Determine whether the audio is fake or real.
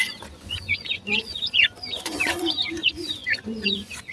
fake